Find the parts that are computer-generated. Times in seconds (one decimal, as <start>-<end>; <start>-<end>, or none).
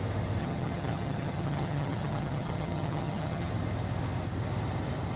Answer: 0.4-3.5